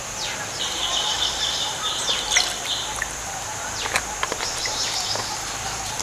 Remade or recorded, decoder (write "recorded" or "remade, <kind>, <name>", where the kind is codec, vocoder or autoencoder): remade, vocoder, BigVGAN v2